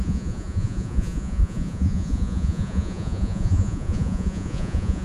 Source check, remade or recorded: remade